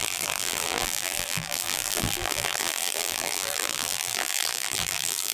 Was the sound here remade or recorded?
remade